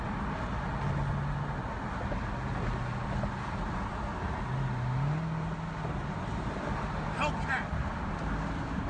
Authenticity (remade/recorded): recorded